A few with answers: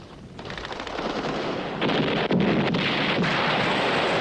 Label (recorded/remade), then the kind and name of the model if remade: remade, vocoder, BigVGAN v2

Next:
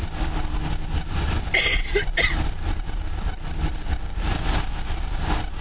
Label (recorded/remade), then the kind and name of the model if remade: recorded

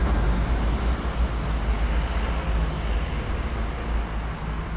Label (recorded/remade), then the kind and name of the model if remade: recorded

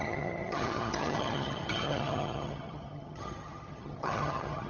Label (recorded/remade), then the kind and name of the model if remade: remade, vocoder, HiFi-GAN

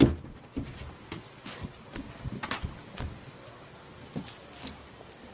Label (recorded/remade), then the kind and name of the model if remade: recorded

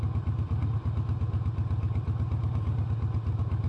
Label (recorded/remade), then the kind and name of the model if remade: recorded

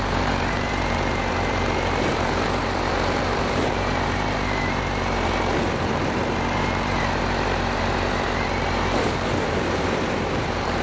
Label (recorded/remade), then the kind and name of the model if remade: remade, vocoder, BigVGAN v2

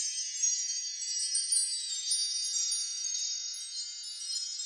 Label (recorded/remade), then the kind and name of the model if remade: remade, vocoder, BigVGAN v2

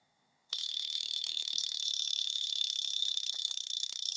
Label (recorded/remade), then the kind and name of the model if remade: remade, codec, SNAC